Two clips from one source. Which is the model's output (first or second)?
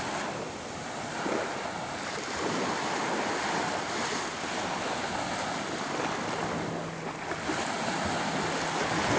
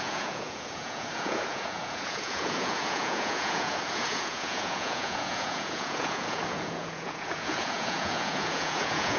second